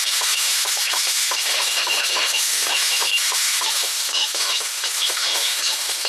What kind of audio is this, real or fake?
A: fake